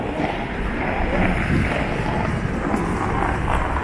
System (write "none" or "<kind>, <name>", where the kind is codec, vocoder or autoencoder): none